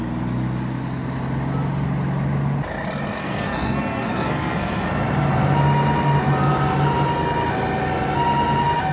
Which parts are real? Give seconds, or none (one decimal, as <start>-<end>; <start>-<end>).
0.0-3.2; 4.8-8.9

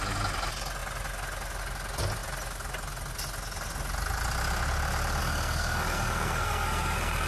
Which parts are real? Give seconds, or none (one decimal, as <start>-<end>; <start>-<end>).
0.0-5.2

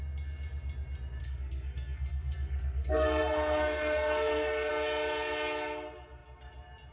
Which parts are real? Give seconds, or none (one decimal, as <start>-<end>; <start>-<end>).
0.0-1.2; 4.7-6.9

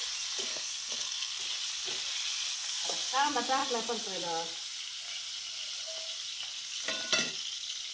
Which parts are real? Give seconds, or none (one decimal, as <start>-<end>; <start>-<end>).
0.0-0.5; 1.4-7.9

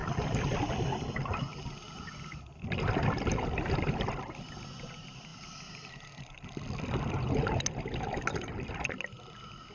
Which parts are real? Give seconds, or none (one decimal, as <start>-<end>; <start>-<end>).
0.0-9.7